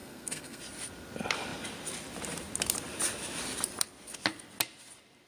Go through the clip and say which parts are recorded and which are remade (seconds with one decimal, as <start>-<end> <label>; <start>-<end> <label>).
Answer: 0.0-0.6 remade; 0.6-5.3 recorded